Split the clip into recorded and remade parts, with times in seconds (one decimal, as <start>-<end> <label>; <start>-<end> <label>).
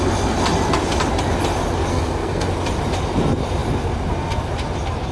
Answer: 0.0-1.9 recorded; 1.9-2.5 remade; 2.5-5.1 recorded